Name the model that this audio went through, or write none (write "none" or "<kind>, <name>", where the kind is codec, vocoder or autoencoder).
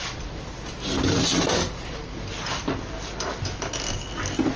none